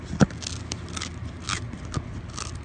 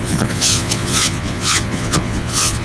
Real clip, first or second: first